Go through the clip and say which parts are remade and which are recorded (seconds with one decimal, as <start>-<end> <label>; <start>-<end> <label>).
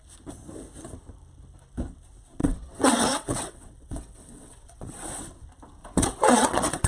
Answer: 0.0-2.4 recorded; 2.4-5.2 remade; 5.2-5.8 recorded; 5.8-6.9 remade